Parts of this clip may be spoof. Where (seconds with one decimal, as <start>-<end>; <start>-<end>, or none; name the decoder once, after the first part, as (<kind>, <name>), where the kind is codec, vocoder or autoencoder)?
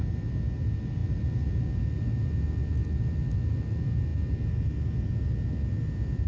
none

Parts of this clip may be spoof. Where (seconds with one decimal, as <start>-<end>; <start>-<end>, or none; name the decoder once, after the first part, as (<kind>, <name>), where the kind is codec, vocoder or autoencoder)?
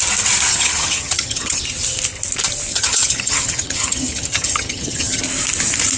0.5-1.6 (vocoder, HiFi-GAN); 2.7-5.2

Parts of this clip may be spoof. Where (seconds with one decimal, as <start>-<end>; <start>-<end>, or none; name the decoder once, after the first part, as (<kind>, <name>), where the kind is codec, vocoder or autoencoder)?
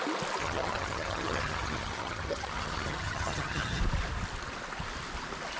0.4-3.8 (vocoder, HiFi-GAN)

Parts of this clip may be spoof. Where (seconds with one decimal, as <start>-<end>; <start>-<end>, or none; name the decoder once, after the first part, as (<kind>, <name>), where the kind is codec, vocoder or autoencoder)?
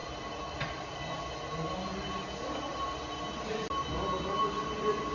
none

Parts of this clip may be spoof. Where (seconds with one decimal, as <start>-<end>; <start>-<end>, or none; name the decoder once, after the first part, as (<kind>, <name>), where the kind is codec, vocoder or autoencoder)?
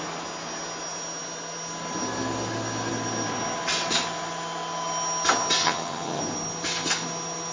5.6-6.2 (vocoder, HiFi-GAN)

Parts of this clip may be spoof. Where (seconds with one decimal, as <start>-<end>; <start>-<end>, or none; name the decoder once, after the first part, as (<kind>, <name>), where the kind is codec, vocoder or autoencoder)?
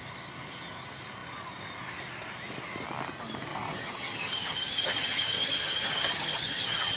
3.5-7.0 (vocoder, HiFi-GAN)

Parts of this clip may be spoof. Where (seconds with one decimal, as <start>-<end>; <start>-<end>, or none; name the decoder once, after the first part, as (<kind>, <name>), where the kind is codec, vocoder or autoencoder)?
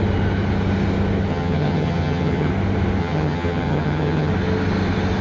1.3-2.5 (vocoder, HiFi-GAN); 3.0-4.3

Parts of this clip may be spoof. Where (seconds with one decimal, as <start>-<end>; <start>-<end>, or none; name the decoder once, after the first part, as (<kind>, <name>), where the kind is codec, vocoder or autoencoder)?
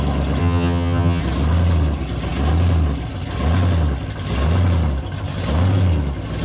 0.4-1.2 (vocoder, HiFi-GAN)